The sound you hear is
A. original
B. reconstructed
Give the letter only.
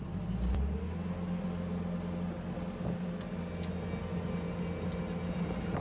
A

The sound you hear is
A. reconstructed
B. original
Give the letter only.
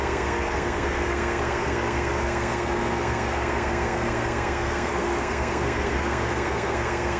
A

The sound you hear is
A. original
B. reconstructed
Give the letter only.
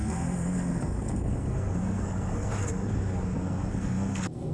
B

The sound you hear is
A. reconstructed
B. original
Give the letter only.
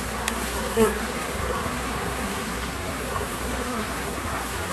A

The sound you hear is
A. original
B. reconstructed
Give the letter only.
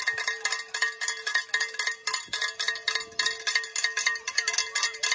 A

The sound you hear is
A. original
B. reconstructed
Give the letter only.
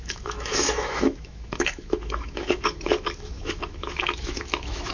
B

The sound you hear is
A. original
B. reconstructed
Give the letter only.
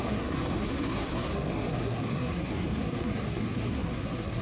B